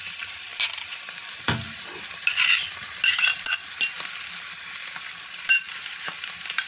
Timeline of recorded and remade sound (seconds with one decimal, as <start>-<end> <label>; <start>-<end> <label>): 0.0-6.7 recorded